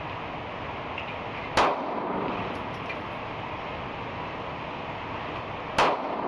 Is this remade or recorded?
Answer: recorded